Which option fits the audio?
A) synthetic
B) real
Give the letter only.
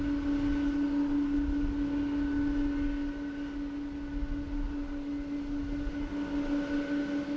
B